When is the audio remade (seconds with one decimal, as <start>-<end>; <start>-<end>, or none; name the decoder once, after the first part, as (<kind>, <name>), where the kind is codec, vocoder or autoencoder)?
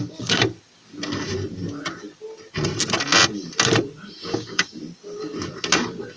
4.2-4.8 (codec, DAC)